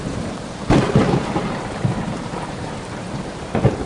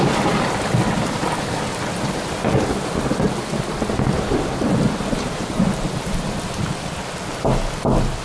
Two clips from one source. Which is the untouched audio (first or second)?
second